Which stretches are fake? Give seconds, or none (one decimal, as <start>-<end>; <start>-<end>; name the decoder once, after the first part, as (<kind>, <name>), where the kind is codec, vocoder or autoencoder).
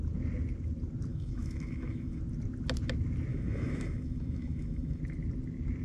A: 1.1-2.2 (autoencoder, DAC-VAE); 3.3-5.0